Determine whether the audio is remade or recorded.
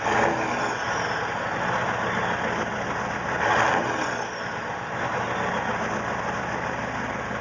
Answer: recorded